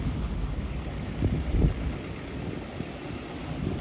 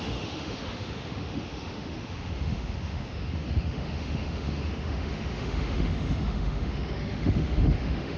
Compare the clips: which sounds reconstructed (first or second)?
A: second